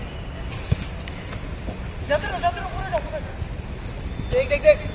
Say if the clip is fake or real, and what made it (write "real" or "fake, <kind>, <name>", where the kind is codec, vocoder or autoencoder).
real